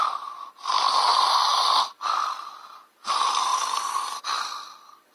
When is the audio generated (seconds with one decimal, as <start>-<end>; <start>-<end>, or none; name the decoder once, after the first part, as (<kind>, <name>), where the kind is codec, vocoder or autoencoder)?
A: none